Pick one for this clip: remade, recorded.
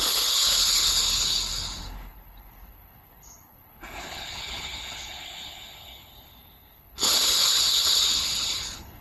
remade